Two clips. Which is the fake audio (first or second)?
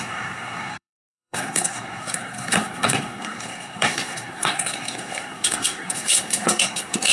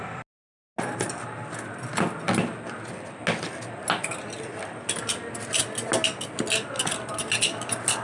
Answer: first